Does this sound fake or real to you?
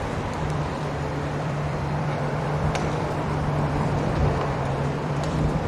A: fake